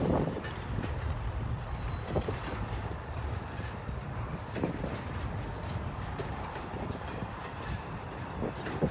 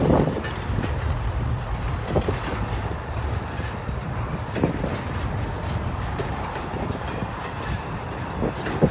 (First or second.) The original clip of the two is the second